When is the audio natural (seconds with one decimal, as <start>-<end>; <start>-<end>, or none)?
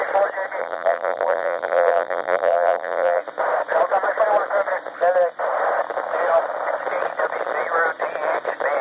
0.0-0.6; 3.2-8.8